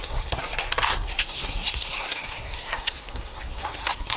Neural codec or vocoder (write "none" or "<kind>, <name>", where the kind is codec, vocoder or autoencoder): codec, SNAC